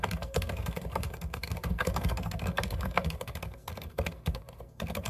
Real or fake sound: fake